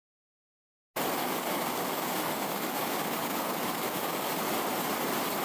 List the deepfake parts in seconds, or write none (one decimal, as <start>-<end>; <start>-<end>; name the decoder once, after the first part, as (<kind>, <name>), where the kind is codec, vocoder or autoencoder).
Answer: 1.2-4.4 (codec, DAC)